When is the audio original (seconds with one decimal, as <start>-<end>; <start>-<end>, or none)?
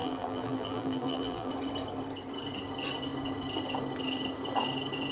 1.5-5.1